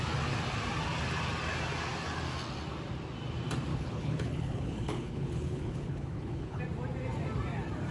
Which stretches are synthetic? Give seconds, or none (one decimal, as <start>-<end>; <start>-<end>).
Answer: 3.7-6.6